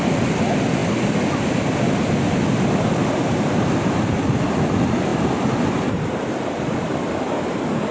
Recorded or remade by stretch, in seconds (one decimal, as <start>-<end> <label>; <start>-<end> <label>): 0.0-5.1 remade; 5.1-7.3 recorded; 7.3-7.9 remade